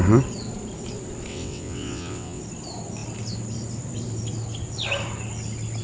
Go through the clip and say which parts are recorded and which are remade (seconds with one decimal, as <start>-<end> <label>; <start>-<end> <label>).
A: 0.0-1.3 recorded; 1.3-2.4 remade; 2.4-5.8 recorded